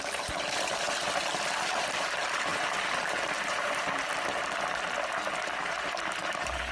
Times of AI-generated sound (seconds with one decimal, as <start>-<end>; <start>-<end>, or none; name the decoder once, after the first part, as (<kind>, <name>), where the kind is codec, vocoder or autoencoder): 0.0-1.0 (vocoder, BigVGAN v2); 1.7-4.1; 5.4-6.7